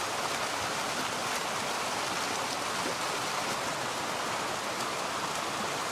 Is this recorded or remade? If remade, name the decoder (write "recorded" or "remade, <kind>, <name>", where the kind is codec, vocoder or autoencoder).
recorded